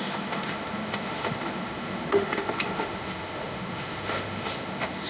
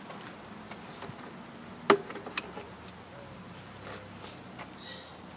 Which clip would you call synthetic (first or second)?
first